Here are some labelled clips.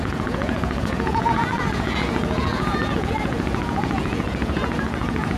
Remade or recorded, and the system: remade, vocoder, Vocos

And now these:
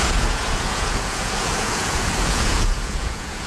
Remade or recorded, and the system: remade, vocoder, Vocos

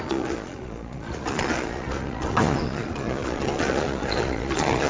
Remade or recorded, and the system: remade, vocoder, Vocos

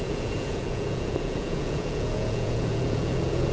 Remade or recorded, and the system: remade, vocoder, Vocos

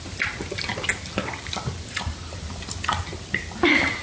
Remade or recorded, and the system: recorded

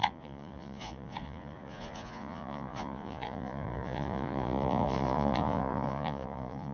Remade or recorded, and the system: remade, vocoder, Vocos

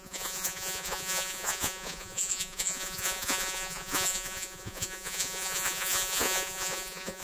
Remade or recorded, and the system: remade, vocoder, Vocos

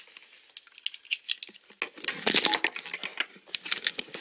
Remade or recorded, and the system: recorded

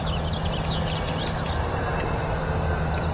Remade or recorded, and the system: recorded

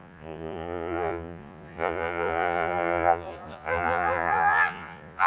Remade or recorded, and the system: remade, vocoder, Vocos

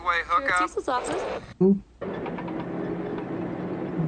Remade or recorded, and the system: recorded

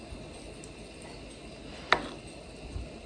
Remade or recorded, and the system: recorded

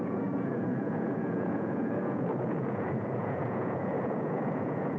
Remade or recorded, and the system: remade, vocoder, Vocos